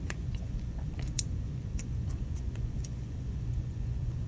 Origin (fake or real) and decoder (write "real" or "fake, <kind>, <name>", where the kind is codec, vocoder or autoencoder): fake, vocoder, Vocos